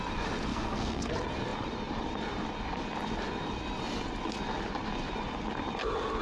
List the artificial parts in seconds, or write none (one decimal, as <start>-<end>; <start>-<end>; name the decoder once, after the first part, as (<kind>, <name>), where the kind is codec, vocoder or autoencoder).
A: 0.5-1.1 (codec, SNAC)

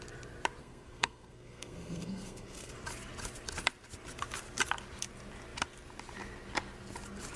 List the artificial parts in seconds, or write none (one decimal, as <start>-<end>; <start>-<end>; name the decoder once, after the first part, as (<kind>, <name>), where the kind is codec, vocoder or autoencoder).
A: 0.6-2.7 (codec, SNAC)

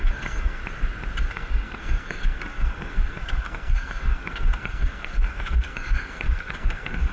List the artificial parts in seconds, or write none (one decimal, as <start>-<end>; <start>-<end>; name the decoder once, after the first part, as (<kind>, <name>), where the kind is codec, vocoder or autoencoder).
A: 0.0-0.6 (codec, SNAC); 1.3-7.1